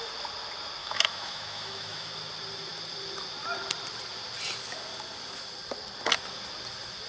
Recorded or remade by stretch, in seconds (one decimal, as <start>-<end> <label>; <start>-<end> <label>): 0.0-0.8 recorded; 0.8-2.1 remade; 2.1-7.1 recorded